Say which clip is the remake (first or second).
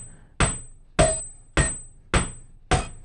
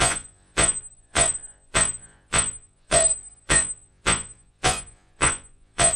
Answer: second